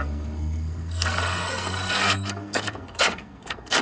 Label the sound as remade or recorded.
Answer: remade